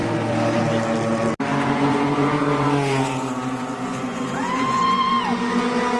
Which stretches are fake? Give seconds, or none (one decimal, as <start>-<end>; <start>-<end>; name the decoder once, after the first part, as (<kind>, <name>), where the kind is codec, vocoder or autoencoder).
0.0-0.6 (vocoder, Vocos); 1.5-5.1